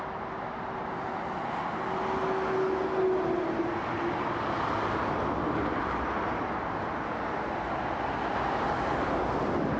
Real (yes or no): yes